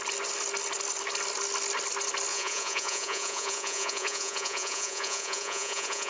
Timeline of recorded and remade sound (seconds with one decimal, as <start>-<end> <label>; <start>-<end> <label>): 0.0-2.3 recorded; 2.3-6.1 remade